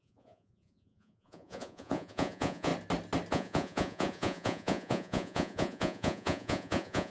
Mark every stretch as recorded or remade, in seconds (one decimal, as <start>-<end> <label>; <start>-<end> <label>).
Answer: 0.0-2.7 remade; 2.7-3.3 recorded; 3.3-7.1 remade